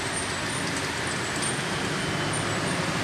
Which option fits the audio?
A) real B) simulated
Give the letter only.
A